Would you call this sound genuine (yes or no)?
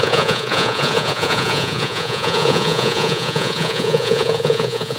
no